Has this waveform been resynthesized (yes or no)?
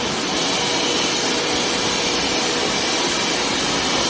no